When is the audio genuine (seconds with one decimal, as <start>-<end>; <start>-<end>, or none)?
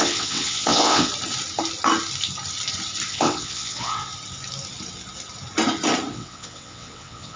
1.1-3.1; 4.1-6.1